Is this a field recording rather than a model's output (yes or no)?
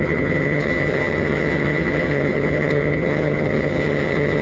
no